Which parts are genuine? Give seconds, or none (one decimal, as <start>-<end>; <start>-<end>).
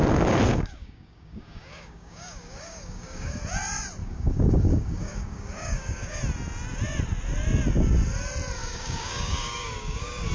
0.0-0.5; 3.4-4.0; 6.2-8.6